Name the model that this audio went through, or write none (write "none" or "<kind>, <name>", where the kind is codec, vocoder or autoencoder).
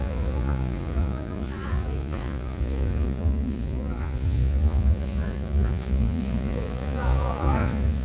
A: vocoder, Vocos